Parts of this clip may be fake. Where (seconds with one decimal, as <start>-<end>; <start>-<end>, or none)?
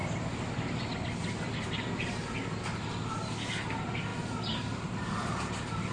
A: none